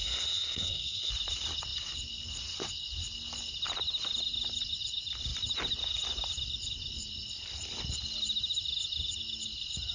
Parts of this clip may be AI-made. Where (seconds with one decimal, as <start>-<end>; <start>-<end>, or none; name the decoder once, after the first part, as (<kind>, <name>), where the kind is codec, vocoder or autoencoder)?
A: 0.0-1.1 (codec, SNAC)